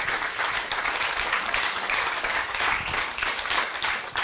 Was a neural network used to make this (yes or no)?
yes